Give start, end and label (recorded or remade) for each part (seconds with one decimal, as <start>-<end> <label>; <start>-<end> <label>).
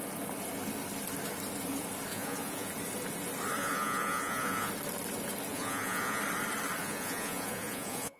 0.0-2.1 recorded; 2.1-2.7 remade; 2.7-3.6 recorded; 3.6-4.7 remade; 4.7-5.5 recorded; 5.5-6.2 remade; 6.2-6.8 recorded; 6.8-8.2 remade